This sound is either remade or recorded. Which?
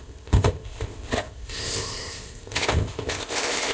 remade